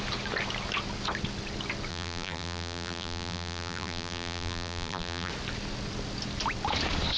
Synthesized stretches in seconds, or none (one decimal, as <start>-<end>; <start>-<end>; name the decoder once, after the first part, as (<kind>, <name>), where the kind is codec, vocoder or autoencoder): 1.9-5.3 (vocoder, BigVGAN v2)